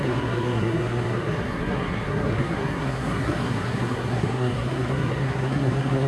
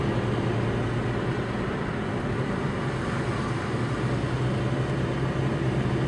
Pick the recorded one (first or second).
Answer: second